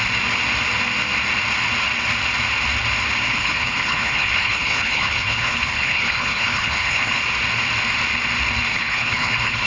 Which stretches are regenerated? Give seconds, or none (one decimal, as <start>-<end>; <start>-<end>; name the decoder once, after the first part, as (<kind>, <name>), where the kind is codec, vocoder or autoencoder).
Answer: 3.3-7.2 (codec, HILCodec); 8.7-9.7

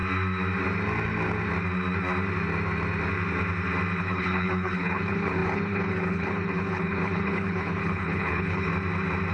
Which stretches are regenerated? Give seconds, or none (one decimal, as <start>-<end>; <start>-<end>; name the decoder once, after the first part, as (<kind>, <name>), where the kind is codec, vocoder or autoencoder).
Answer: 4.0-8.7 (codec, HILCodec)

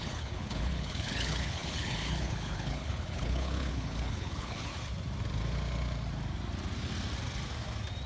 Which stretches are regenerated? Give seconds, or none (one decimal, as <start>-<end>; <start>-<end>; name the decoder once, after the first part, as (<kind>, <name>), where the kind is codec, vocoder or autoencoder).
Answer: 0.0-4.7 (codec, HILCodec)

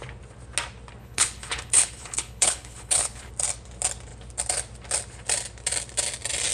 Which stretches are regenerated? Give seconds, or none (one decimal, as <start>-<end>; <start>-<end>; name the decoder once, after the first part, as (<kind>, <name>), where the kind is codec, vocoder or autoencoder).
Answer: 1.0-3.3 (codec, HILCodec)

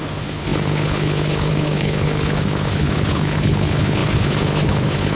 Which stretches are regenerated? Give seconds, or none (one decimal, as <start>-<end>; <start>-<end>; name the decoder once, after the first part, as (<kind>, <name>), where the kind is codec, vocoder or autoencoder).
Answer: 0.0-5.2 (codec, HILCodec)

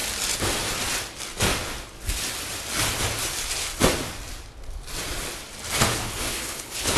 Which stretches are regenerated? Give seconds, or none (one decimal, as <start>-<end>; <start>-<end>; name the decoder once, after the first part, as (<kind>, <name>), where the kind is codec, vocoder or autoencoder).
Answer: 5.9-7.0 (codec, HILCodec)

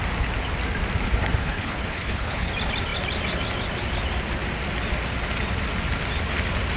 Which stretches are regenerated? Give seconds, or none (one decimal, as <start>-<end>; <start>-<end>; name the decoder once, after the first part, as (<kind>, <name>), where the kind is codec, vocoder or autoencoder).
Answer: 1.4-2.5 (codec, HILCodec)

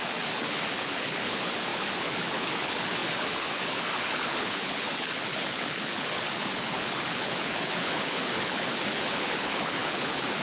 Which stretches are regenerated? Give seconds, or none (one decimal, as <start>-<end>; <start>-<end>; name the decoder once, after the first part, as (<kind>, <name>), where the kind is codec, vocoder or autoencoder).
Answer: 0.0-10.4 (codec, HILCodec)